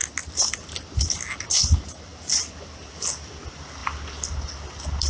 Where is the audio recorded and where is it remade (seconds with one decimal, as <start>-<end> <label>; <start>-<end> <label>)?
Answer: 0.0-5.1 recorded